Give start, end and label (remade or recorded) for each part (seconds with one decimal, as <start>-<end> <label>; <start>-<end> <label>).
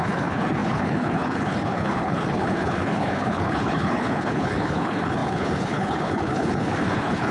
0.0-7.3 remade